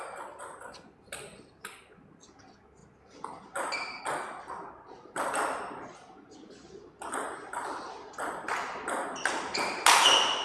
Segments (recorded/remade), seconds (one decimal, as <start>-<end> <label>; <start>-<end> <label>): 0.0-10.4 recorded